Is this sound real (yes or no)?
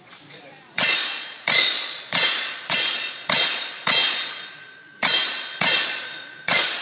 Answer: no